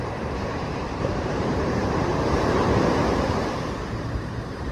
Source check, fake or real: fake